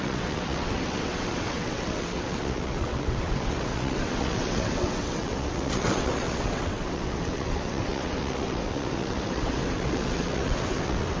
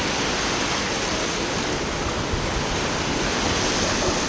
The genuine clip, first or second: second